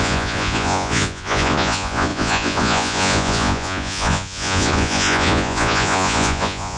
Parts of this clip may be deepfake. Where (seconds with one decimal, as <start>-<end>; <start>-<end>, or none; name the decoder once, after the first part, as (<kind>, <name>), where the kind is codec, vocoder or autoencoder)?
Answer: 0.0-6.8 (vocoder, Vocos)